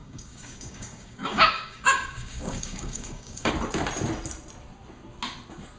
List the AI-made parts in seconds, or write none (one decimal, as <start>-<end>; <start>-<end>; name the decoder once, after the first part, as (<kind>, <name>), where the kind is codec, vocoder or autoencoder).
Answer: 0.0-3.5 (codec, DAC)